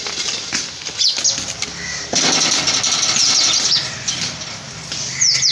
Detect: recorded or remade recorded